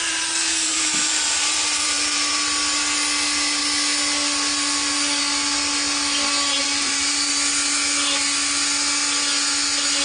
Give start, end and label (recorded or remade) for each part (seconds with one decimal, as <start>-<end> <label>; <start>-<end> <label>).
0.0-2.3 remade; 2.3-6.6 recorded; 6.6-7.3 remade; 7.3-10.0 recorded